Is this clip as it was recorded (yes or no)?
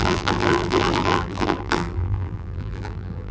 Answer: no